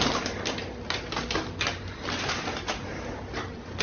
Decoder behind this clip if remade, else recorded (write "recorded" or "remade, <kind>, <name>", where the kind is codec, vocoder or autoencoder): recorded